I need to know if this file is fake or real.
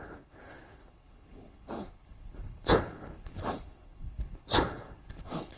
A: fake